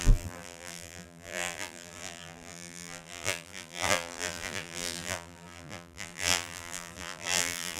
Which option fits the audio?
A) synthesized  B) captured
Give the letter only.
A